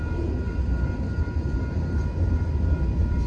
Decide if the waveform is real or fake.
real